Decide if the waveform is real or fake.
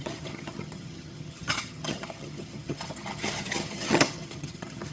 fake